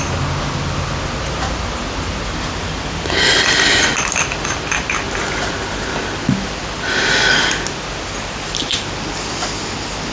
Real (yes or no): yes